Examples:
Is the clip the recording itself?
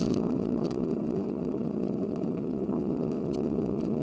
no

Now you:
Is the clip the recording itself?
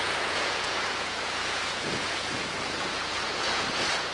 no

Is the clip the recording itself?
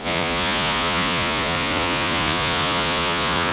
no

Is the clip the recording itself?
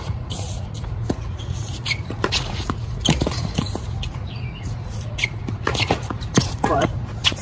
no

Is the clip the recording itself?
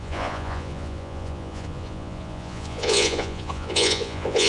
no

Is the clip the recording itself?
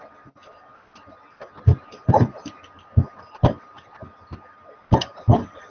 yes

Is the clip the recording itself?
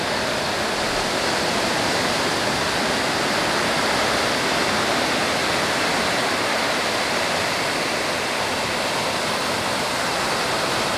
yes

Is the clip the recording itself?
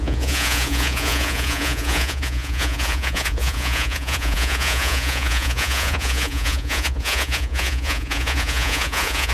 no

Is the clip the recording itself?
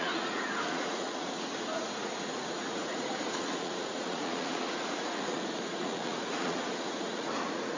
no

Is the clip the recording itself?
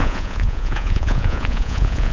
no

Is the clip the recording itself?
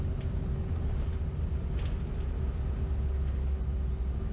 yes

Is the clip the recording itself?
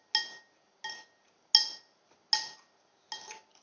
yes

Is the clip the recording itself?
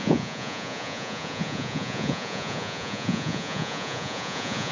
no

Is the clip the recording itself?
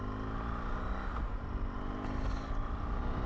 yes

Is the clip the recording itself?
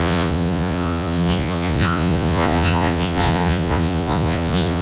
no